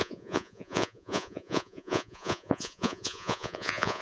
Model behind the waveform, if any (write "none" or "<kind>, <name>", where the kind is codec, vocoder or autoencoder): vocoder, Vocos